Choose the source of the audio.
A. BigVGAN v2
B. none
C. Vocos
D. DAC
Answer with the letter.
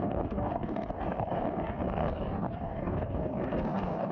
D